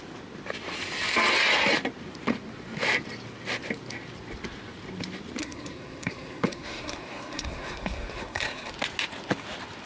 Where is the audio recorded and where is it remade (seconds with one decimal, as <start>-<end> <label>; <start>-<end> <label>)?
0.0-5.4 recorded; 5.4-8.7 remade; 8.7-9.9 recorded